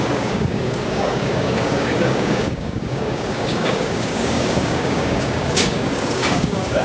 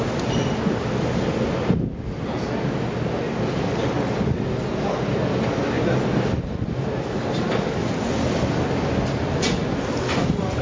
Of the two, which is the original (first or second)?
second